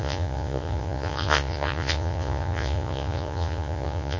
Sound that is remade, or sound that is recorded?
remade